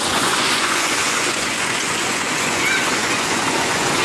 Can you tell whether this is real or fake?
fake